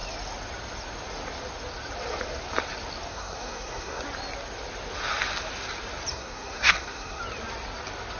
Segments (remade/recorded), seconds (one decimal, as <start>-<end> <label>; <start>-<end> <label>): 0.0-3.1 recorded; 3.1-4.0 remade; 4.0-6.1 recorded; 6.1-7.2 remade; 7.2-8.2 recorded